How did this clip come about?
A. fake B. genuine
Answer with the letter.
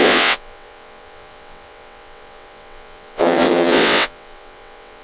A